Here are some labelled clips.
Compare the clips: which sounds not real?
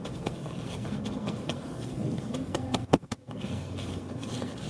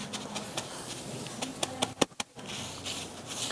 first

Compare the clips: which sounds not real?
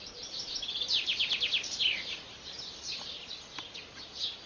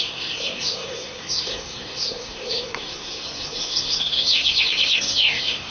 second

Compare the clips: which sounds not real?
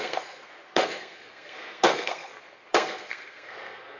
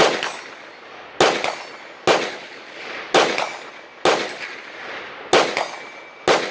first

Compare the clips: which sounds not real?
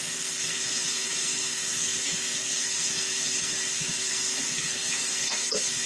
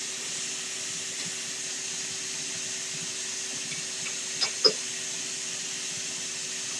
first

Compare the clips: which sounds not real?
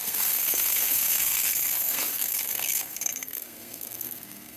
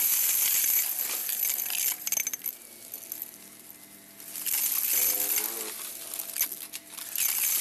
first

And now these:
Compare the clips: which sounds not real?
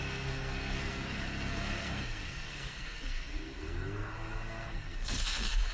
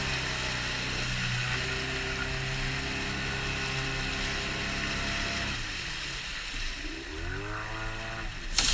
first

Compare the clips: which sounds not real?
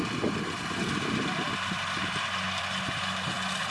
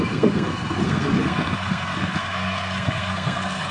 second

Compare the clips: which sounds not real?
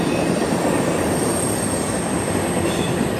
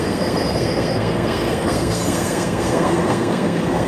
second